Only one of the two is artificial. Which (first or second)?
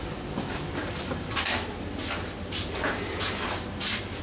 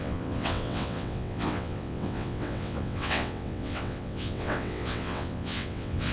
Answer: second